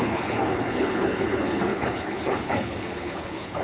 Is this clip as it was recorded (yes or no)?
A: no